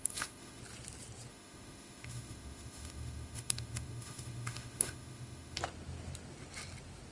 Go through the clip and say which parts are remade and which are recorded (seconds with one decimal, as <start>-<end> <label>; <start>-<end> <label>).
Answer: 0.0-0.6 remade; 0.6-1.3 recorded; 1.3-5.6 remade; 5.6-7.1 recorded